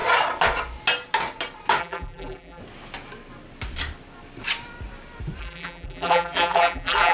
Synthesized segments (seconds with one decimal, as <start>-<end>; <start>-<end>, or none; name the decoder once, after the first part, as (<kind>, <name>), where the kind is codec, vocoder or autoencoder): 1.8-2.6 (vocoder, BigVGAN v2); 5.4-7.1